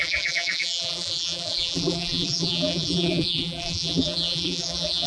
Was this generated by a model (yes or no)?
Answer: yes